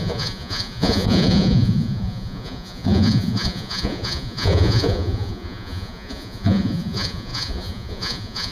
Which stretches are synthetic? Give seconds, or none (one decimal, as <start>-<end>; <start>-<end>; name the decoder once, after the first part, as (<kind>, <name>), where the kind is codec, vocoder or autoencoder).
0.0-8.5 (vocoder, Vocos)